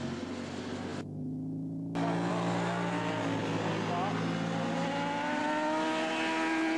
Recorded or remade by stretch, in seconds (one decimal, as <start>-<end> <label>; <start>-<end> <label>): 0.0-6.8 recorded